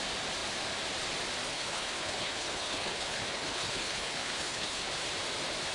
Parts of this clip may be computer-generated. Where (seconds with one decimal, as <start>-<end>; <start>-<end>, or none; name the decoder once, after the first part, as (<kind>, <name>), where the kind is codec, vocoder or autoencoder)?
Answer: 1.5-4.9 (codec, HILCodec)